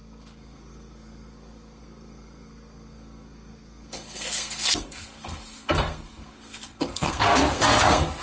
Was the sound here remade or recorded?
remade